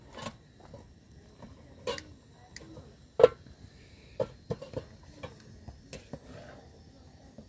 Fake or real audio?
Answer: real